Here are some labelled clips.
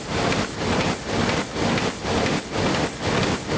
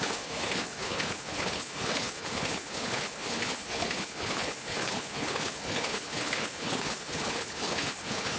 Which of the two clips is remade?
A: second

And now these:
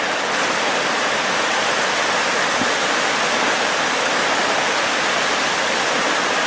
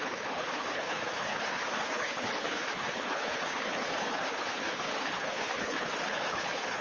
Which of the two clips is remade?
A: second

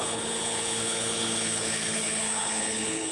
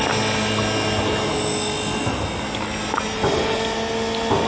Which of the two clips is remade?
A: first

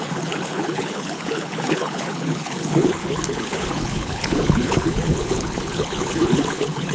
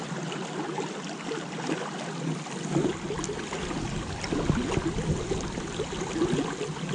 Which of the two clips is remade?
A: first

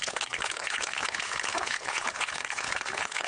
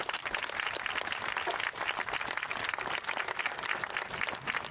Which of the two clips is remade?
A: first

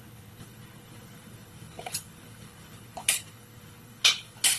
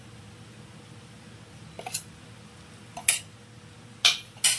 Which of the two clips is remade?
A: first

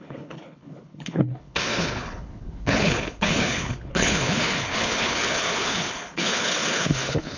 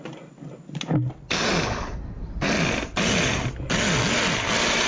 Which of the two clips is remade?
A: first